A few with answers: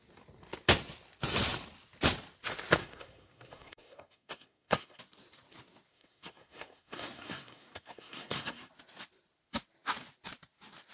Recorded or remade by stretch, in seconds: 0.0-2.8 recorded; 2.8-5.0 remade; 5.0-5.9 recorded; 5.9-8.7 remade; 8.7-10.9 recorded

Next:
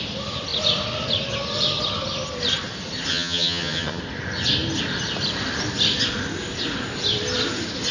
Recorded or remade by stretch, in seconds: 0.0-3.1 recorded; 3.1-4.0 remade; 4.0-7.9 recorded